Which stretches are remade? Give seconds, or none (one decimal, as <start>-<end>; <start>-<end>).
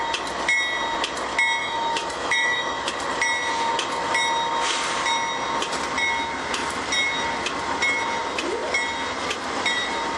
1.6-2.9